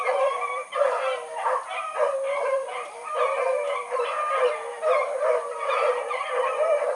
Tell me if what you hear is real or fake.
fake